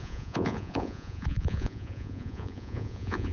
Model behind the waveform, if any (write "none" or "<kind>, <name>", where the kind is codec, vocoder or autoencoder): vocoder, Vocos